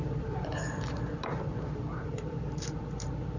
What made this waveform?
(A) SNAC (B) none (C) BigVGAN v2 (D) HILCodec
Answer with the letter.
C